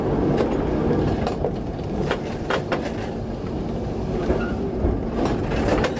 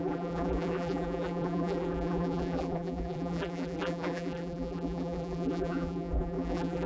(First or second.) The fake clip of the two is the second